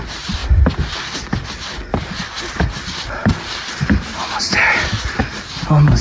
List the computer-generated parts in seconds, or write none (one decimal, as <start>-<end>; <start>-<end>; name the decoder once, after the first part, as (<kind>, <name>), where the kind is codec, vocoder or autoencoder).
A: none